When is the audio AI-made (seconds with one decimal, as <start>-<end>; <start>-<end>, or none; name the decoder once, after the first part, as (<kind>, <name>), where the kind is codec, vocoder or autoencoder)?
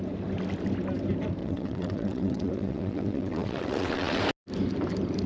1.4-4.2 (vocoder, WaveNeXt)